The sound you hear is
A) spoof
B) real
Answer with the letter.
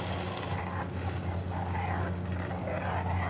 B